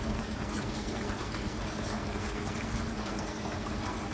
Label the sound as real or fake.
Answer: fake